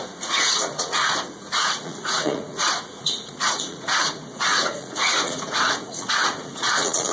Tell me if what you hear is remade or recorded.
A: remade